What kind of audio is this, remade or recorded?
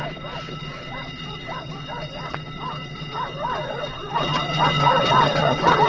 remade